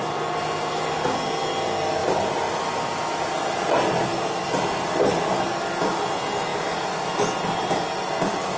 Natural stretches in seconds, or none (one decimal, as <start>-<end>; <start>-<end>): 0.0-2.0; 2.5-4.1; 4.9-8.6

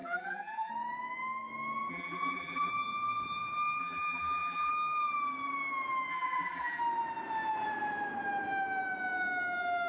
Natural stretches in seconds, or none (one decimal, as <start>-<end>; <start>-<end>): 0.7-1.9; 2.7-3.8; 4.7-6.1; 6.8-9.9